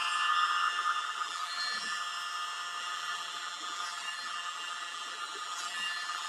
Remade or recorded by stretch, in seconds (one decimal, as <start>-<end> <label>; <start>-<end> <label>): 0.0-1.0 recorded; 1.0-2.0 remade; 2.0-2.8 recorded; 2.8-6.3 remade